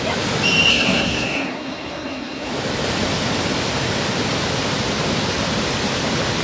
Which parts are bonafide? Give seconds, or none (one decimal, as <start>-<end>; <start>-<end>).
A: 0.0-0.7; 2.5-6.4